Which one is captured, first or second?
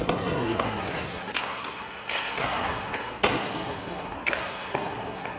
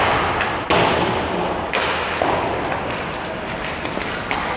second